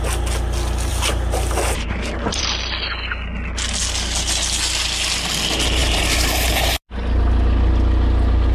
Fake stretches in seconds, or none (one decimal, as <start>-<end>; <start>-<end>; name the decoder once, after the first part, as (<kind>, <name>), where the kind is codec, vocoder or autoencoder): 0.9-2.4 (vocoder, BigVGAN v2); 5.8-6.8